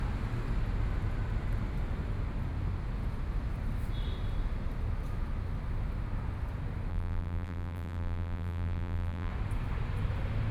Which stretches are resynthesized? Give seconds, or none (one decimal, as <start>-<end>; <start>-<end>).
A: 6.9-9.3